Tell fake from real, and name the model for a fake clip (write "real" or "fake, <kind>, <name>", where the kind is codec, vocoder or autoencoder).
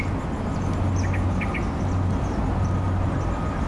real